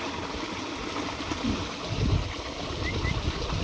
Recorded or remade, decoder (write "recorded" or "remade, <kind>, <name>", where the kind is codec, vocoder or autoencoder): recorded